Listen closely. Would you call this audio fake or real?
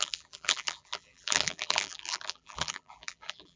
fake